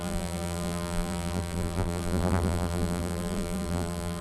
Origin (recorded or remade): remade